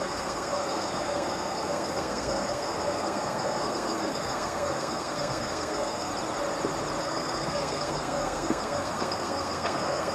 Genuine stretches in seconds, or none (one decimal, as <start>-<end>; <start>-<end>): 6.1-7.0